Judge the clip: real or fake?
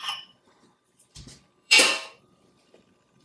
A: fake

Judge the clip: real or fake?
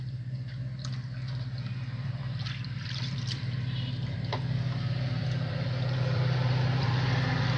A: fake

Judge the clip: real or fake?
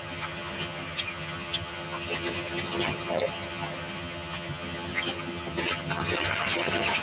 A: fake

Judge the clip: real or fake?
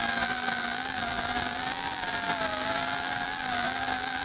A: fake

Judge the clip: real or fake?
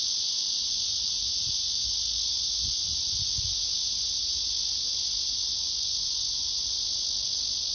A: real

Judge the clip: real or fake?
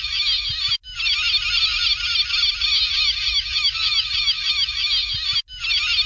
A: real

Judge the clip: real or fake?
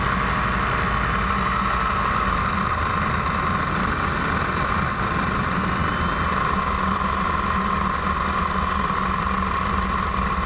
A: real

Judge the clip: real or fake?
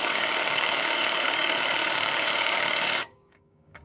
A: fake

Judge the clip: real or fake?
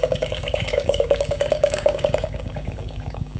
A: fake